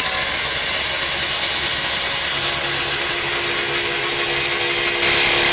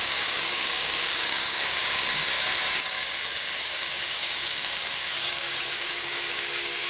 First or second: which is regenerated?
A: second